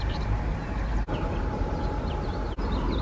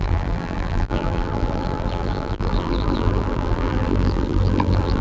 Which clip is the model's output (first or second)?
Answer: second